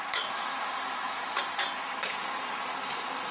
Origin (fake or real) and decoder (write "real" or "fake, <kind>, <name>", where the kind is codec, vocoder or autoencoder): fake, vocoder, BigVGAN v2